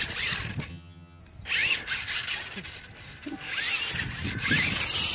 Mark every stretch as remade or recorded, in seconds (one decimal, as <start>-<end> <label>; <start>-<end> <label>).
0.0-0.7 recorded; 0.7-1.2 remade; 1.2-5.1 recorded